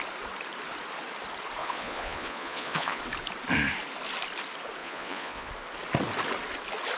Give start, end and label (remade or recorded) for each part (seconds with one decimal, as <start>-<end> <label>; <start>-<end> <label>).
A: 0.0-1.6 recorded; 1.6-3.0 remade; 3.0-4.8 recorded; 4.8-5.5 remade; 5.5-7.0 recorded